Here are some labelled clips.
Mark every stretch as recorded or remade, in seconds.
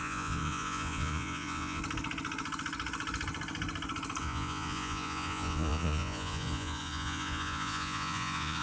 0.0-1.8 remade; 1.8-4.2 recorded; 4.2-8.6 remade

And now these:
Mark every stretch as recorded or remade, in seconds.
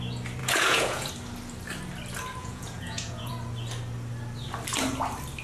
0.0-0.4 recorded; 0.4-1.1 remade; 1.1-2.4 recorded; 2.4-3.3 remade; 3.3-5.4 recorded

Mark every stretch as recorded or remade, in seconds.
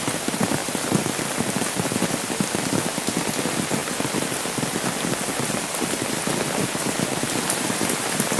0.0-8.4 recorded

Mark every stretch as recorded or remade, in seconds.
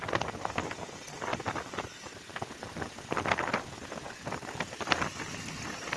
0.0-6.0 recorded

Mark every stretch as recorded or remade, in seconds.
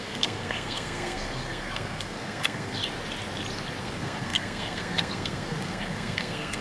0.0-2.8 remade; 2.8-3.8 recorded; 3.8-6.6 remade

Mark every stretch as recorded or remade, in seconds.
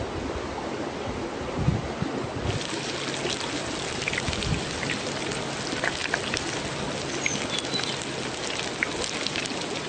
0.0-9.9 recorded